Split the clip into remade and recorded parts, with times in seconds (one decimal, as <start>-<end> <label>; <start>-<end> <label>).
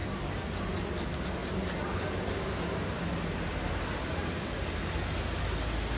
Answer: 0.0-6.0 recorded